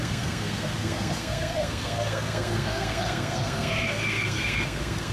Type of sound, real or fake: fake